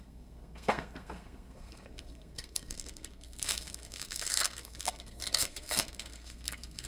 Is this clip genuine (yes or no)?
no